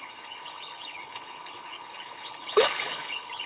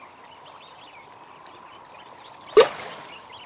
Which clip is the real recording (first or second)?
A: second